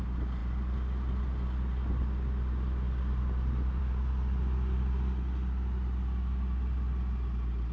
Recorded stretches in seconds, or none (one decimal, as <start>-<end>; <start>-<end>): 0.0-7.7